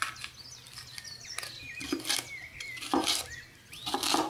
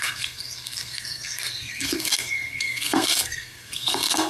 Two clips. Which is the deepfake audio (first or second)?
second